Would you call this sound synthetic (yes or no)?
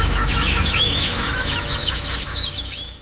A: yes